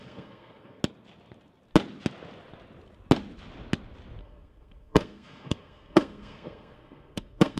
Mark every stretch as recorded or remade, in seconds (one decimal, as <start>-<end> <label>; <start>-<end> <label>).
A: 0.0-0.8 remade; 0.8-4.2 recorded; 4.2-7.6 remade